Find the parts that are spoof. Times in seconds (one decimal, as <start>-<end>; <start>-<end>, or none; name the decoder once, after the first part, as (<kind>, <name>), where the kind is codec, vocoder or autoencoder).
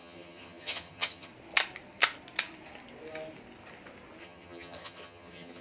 0.0-1.3 (vocoder, HiFi-GAN); 4.2-5.6